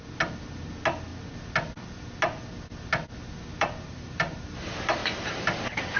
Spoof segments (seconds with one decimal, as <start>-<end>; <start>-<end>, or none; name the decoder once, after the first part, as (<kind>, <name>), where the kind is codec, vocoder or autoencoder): 3.5-4.4 (vocoder, BigVGAN v2); 5.0-5.6

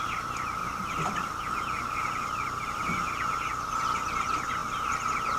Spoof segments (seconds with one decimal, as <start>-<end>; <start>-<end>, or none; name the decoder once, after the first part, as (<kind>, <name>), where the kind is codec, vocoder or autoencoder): 0.6-3.8 (vocoder, BigVGAN v2); 4.6-5.4

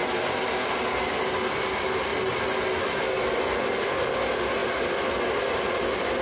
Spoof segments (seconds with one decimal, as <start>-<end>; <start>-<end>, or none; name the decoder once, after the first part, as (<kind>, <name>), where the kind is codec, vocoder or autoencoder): none